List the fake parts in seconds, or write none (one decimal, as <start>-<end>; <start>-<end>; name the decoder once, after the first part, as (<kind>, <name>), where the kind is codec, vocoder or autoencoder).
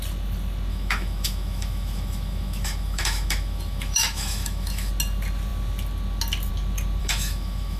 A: 0.7-4.9 (autoencoder, DAC-VAE); 7.0-7.8